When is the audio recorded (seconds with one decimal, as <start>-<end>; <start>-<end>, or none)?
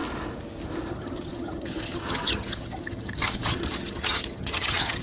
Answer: 0.0-0.9